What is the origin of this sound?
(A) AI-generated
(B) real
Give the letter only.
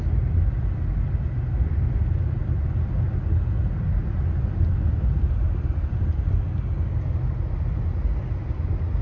B